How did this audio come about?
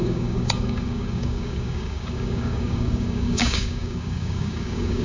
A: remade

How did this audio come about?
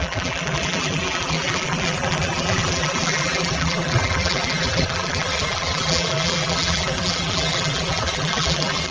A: remade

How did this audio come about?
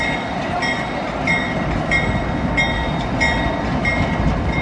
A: recorded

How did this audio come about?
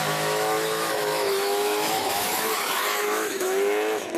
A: remade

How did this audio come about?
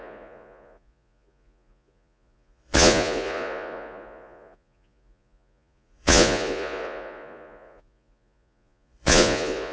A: remade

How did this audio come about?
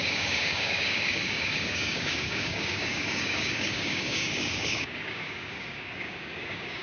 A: remade